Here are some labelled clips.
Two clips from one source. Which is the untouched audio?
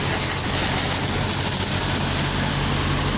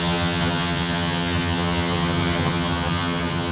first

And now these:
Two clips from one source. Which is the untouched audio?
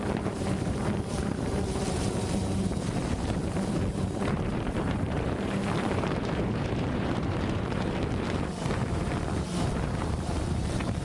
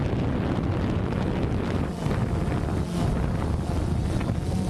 second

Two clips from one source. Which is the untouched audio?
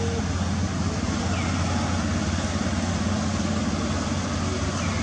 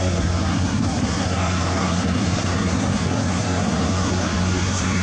first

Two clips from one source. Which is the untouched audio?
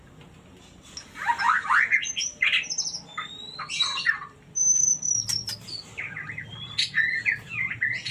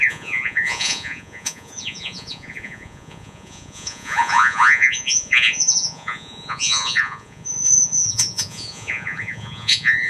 first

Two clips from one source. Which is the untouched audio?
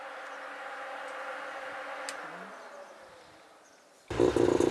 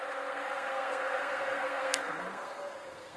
first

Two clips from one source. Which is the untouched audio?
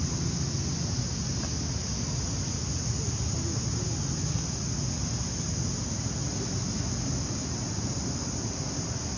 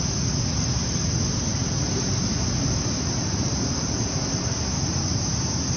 first